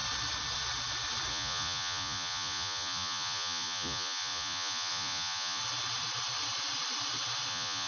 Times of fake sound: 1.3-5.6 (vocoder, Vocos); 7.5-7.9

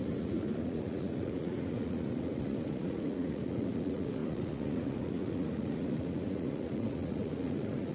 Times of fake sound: 0.0-7.9 (vocoder, Vocos)

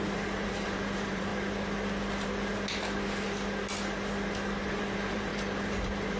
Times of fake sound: 0.0-1.3 (vocoder, BigVGAN v2); 4.7-6.2

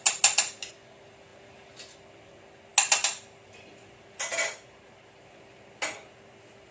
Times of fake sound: none

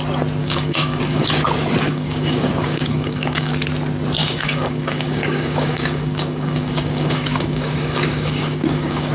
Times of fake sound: 0.4-1.3 (codec, DAC); 1.9-3.5; 4.2-9.1